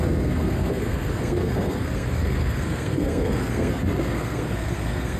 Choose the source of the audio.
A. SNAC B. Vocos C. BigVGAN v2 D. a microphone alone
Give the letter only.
A